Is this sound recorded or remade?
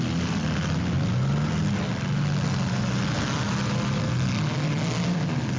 recorded